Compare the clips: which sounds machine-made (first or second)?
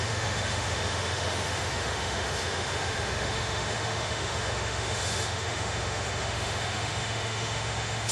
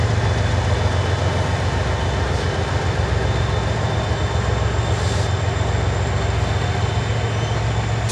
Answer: first